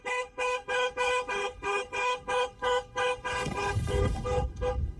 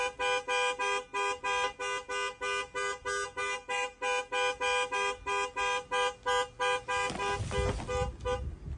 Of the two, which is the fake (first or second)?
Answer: first